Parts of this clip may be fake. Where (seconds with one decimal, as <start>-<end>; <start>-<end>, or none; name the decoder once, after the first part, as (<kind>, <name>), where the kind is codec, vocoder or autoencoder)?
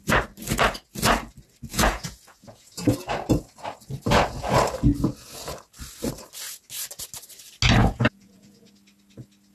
1.7-2.9 (vocoder, Vocos); 7.8-8.7